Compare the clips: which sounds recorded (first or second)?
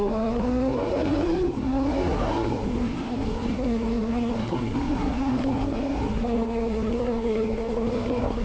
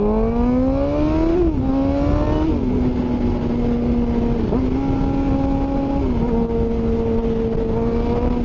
second